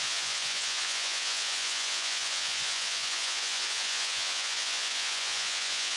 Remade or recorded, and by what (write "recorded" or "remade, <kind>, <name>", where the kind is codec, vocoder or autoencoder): remade, vocoder, Vocos